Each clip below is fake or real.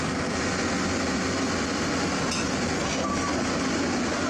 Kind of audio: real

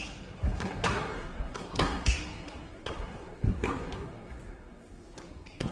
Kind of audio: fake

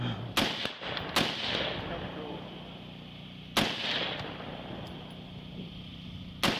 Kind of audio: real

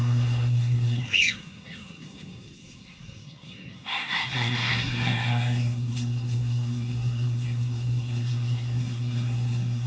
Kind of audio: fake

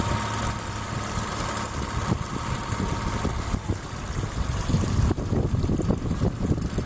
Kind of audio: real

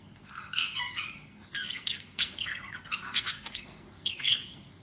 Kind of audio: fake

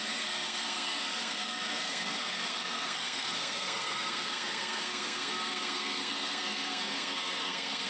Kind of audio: fake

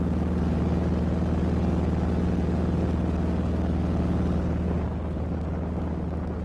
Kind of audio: real